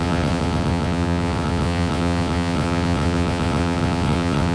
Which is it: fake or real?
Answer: fake